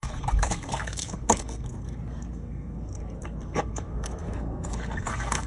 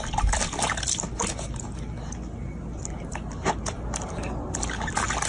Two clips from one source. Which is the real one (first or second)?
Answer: second